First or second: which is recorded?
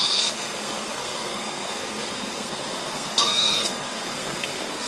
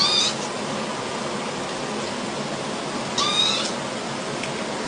second